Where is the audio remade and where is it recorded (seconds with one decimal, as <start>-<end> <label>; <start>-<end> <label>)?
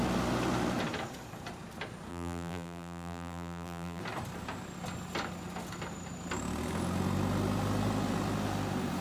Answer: 0.0-2.1 recorded; 2.1-4.0 remade; 4.0-9.0 recorded